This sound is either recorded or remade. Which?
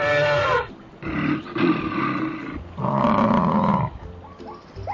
recorded